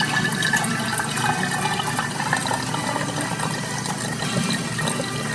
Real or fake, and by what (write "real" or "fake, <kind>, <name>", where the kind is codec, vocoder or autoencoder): real